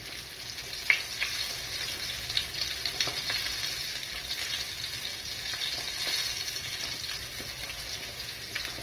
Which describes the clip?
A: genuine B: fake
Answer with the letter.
A